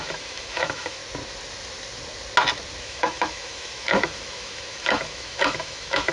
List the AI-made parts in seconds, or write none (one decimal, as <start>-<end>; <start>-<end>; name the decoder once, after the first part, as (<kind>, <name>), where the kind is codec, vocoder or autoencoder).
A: 0.0-1.0 (autoencoder, DAC-VAE); 2.8-6.1